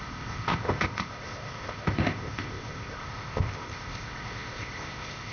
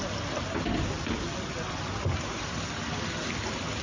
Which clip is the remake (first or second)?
first